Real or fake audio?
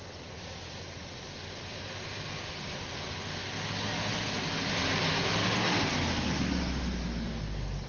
real